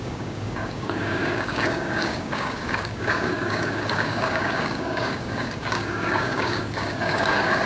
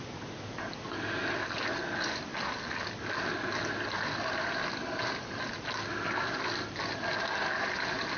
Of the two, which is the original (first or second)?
second